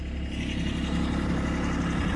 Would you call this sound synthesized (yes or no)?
no